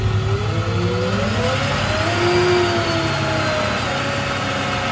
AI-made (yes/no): no